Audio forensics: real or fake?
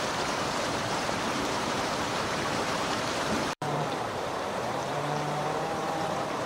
fake